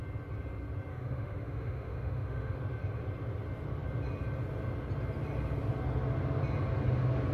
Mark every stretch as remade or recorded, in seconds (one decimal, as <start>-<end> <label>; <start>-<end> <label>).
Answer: 0.0-0.9 recorded; 0.9-2.6 remade; 2.6-7.3 recorded